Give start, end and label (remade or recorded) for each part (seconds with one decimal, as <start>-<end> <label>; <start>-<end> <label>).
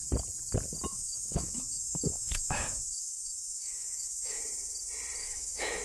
0.0-0.9 recorded; 0.9-4.4 remade; 4.4-5.2 recorded; 5.2-5.8 remade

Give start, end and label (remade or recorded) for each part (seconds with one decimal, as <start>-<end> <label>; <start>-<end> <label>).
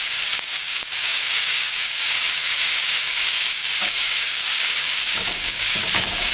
0.0-6.3 remade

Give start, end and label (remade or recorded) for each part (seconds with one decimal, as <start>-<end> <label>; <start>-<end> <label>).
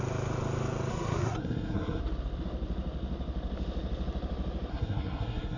0.0-0.9 recorded; 0.9-2.0 remade; 2.0-4.7 recorded; 4.7-5.6 remade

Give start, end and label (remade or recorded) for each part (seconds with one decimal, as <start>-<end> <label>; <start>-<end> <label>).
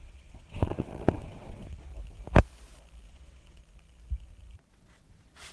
0.0-1.9 remade; 1.9-3.1 recorded; 3.1-3.6 remade; 3.6-4.7 recorded; 4.7-5.5 remade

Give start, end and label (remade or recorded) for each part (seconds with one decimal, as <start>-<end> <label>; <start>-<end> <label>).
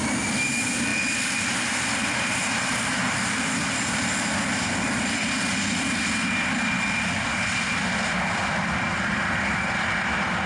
0.0-5.2 remade; 5.2-7.3 recorded; 7.3-10.5 remade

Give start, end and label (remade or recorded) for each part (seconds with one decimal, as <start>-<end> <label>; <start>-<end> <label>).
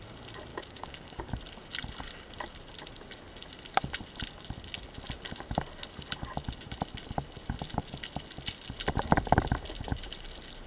0.0-0.5 recorded; 0.5-1.3 remade; 1.3-10.7 recorded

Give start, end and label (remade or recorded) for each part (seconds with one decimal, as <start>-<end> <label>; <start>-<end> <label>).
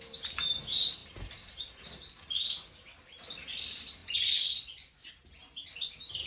0.0-4.0 recorded; 4.0-5.1 remade; 5.1-6.3 recorded